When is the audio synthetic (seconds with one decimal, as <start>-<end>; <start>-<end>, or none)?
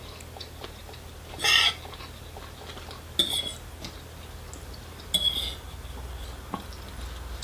none